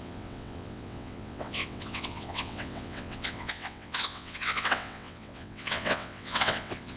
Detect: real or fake fake